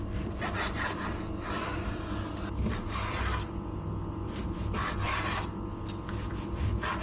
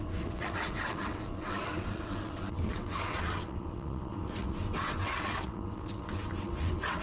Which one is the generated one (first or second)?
second